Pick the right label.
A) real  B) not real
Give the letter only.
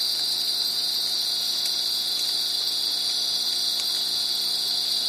A